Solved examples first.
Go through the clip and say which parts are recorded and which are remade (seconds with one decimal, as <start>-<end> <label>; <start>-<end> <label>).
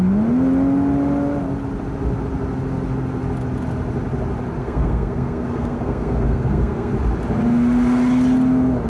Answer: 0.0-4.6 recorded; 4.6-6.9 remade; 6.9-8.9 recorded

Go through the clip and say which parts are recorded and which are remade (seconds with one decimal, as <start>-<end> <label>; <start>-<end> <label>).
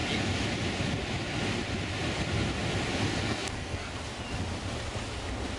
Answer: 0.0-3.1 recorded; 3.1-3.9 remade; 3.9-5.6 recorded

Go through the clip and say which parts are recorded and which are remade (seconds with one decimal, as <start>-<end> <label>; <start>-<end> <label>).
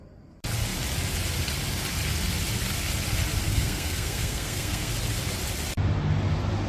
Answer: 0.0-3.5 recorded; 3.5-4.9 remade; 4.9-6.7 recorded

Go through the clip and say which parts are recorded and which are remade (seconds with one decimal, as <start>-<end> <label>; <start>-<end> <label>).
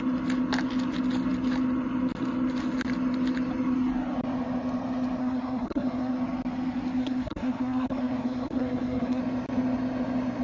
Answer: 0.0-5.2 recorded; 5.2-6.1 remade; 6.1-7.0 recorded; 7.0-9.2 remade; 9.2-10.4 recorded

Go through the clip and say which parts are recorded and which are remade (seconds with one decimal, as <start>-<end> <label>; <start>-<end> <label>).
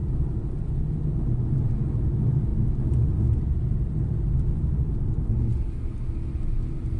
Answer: 0.0-7.0 recorded